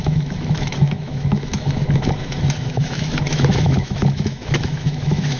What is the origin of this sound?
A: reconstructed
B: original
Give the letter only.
A